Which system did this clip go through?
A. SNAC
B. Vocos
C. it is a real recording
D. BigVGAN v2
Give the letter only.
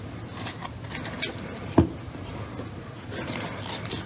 C